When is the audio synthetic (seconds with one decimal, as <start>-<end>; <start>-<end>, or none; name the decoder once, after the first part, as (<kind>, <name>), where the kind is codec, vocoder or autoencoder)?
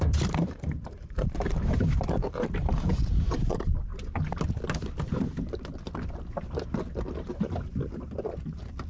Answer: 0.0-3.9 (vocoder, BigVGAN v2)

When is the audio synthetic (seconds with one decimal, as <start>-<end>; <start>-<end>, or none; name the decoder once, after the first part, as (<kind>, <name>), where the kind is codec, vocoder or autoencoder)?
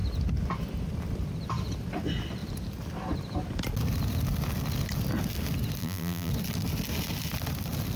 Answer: 5.8-6.3 (vocoder, BigVGAN v2)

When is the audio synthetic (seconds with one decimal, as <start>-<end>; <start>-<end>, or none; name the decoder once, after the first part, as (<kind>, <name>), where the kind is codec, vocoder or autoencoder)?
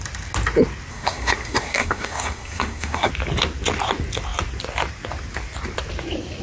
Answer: 0.9-3.1 (codec, SNAC)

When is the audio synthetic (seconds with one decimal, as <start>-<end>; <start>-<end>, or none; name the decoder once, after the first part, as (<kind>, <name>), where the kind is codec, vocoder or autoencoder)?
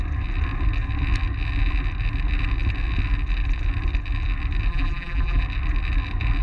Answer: 4.7-5.4 (vocoder, BigVGAN v2)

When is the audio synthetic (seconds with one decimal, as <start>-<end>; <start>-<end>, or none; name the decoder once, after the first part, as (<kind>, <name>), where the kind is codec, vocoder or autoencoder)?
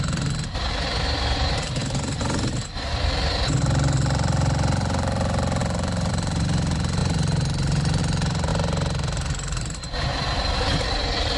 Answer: 0.0-11.4 (vocoder, BigVGAN v2)